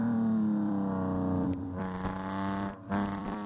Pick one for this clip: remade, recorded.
remade